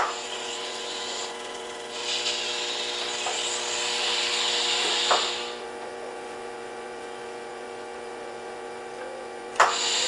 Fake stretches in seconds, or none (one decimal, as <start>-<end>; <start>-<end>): 0.0-2.0; 5.6-10.1